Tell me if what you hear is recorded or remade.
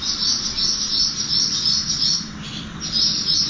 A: recorded